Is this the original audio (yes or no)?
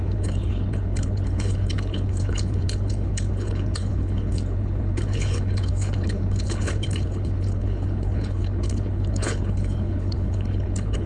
no